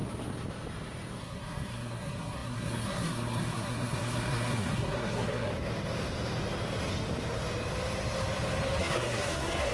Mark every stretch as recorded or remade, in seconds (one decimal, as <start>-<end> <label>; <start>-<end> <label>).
0.0-1.2 recorded; 1.2-5.5 remade; 5.5-8.8 recorded; 8.8-9.7 remade